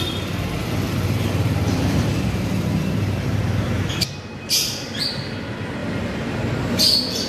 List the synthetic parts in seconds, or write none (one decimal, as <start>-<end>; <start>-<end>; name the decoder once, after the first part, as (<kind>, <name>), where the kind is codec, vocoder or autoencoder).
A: 0.6-5.0 (vocoder, BigVGAN v2)